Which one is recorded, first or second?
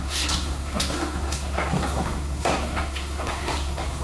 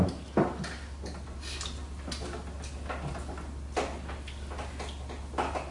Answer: second